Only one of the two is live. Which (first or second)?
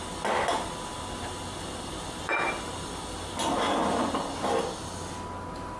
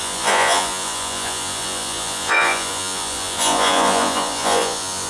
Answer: first